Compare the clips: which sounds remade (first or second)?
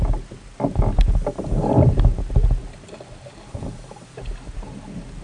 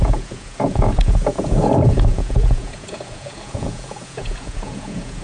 second